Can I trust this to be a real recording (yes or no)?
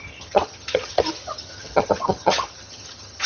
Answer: no